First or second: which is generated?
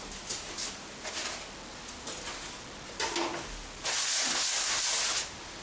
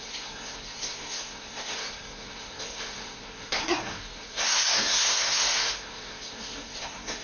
second